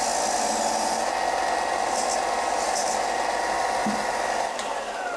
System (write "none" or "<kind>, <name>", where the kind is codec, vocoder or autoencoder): none